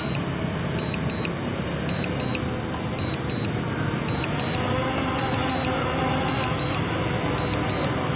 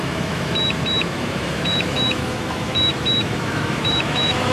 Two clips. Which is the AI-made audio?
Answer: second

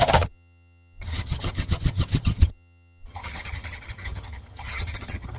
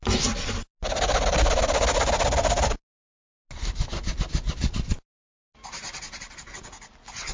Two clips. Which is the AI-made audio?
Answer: first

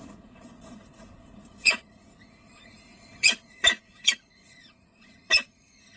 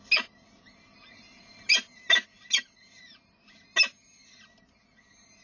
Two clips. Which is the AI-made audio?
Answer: first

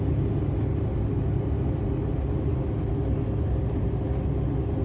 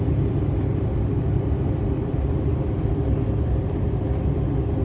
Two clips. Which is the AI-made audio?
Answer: second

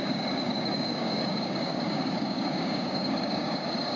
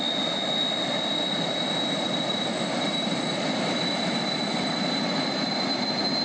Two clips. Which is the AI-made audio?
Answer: first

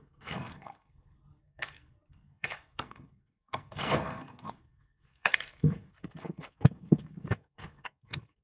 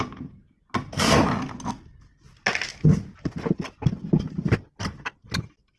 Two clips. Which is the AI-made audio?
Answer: first